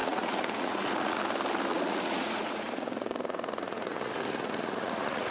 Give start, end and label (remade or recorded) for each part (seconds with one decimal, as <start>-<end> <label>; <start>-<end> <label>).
0.0-1.2 remade; 1.2-1.7 recorded; 1.7-5.3 remade